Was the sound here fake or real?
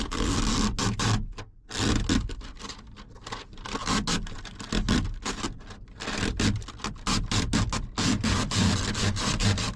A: real